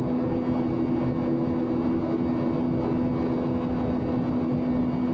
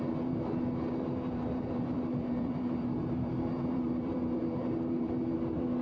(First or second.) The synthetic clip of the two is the second